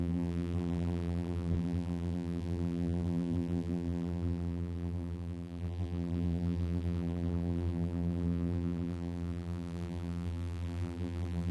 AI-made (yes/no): yes